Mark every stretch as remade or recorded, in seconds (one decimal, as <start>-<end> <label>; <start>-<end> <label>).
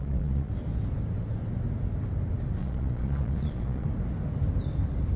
0.0-0.5 remade; 0.5-2.6 recorded; 2.6-3.9 remade; 3.9-5.2 recorded